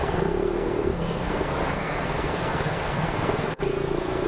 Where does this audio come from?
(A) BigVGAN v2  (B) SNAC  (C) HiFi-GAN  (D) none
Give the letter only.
B